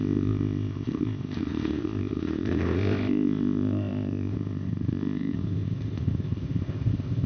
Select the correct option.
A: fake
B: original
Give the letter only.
A